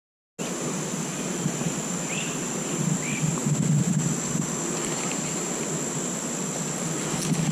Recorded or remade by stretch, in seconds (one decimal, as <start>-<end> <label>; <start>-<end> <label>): 0.0-7.5 recorded